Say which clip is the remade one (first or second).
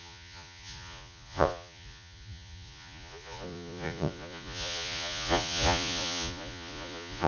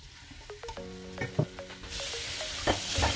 first